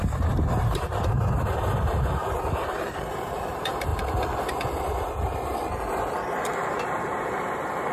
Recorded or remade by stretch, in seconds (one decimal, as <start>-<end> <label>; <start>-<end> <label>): 0.0-3.9 remade; 3.9-6.7 recorded; 6.7-7.9 remade